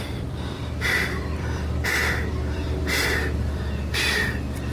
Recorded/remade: remade